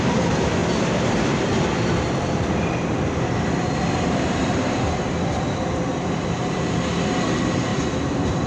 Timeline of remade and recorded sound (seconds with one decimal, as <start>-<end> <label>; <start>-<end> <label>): 0.0-7.7 remade; 7.7-8.5 recorded